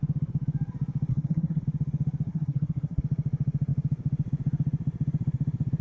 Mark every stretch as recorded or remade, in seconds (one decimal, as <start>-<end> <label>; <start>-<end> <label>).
0.0-1.1 recorded; 1.1-1.6 remade; 1.6-2.3 recorded; 2.3-3.0 remade; 3.0-5.8 recorded